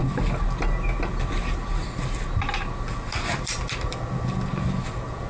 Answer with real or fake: real